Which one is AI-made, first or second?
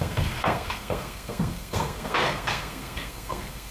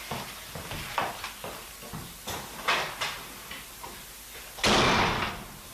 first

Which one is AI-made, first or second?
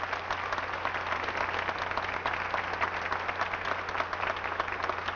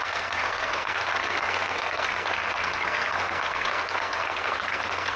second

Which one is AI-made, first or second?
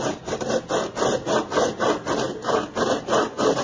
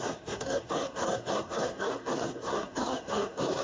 second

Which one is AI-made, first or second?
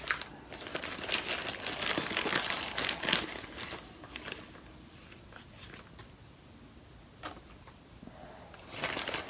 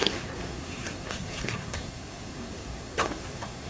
second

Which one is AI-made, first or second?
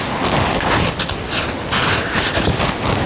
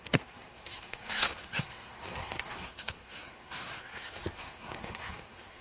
second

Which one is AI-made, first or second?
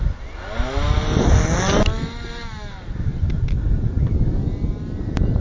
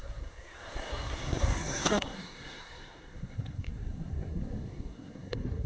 second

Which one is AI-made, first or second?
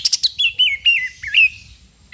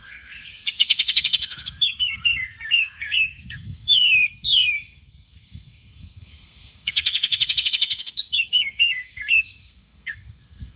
second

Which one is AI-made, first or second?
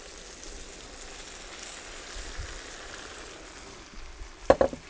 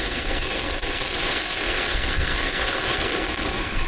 second